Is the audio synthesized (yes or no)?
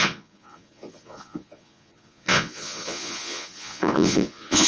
yes